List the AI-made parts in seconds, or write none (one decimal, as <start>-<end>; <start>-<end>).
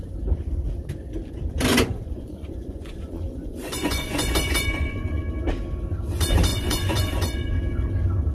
1.7-5.2; 6.5-7.5